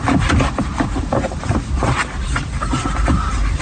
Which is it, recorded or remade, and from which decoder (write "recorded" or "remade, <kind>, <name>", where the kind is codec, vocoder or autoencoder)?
recorded